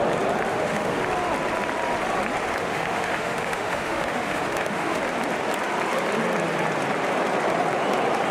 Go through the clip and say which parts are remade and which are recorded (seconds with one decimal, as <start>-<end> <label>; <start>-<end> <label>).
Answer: 0.0-0.5 recorded; 0.5-1.0 remade; 1.0-2.6 recorded; 2.6-5.0 remade; 5.0-8.3 recorded